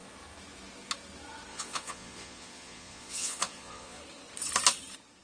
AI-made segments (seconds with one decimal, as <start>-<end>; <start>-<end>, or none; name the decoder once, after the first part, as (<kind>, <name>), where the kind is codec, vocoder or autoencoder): 1.5-4.0 (vocoder, Vocos)